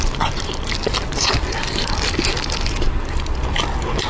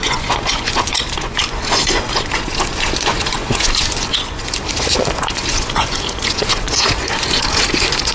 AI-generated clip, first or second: second